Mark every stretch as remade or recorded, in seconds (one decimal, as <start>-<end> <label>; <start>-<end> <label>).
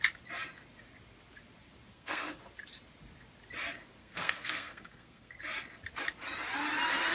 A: 0.0-1.9 recorded; 1.9-2.4 remade; 2.4-4.0 recorded; 4.0-5.4 remade; 5.4-7.1 recorded